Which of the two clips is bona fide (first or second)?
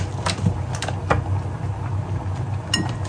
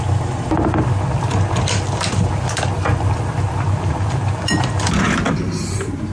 first